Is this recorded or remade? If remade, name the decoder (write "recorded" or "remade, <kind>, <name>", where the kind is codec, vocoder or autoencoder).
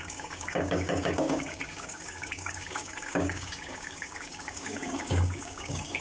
remade, codec, DAC